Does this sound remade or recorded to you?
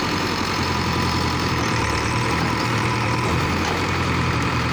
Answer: remade